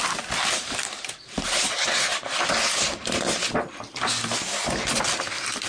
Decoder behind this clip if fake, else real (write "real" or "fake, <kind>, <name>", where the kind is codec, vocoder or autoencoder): real